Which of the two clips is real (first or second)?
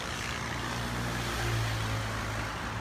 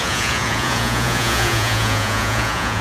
first